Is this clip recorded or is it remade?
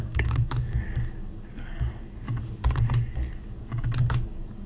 remade